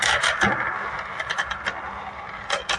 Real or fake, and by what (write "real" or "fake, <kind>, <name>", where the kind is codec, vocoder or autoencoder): real